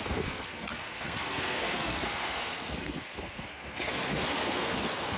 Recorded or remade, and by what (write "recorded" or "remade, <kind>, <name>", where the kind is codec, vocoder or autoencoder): remade, codec, SNAC